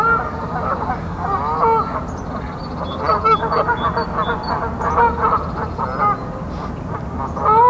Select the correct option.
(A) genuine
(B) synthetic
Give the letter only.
A